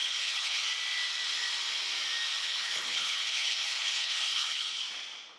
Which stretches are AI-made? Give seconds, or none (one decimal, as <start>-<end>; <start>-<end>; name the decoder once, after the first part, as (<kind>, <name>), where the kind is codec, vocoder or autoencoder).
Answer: 0.0-0.6 (codec, HILCodec); 2.4-4.8